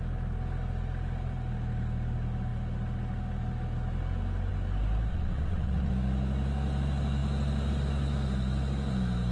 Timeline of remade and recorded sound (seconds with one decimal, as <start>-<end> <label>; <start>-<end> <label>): 0.0-5.1 recorded; 5.1-5.9 remade; 5.9-9.3 recorded